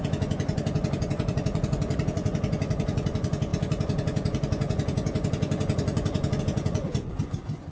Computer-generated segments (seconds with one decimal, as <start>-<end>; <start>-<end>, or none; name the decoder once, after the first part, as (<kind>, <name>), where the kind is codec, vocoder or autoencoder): 0.0-7.7 (vocoder, Vocos)